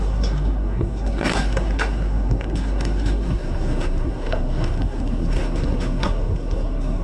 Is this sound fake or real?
fake